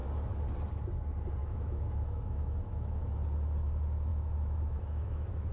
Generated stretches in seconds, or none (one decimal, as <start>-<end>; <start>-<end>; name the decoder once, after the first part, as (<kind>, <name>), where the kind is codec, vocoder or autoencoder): 1.4-3.0 (autoencoder, DAC-VAE); 4.1-5.5